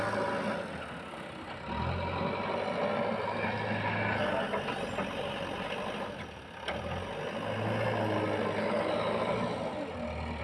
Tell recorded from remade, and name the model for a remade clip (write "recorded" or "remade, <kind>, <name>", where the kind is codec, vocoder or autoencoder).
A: recorded